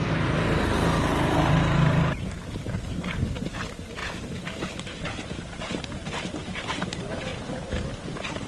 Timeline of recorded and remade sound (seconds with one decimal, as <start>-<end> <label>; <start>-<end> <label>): 0.0-8.5 remade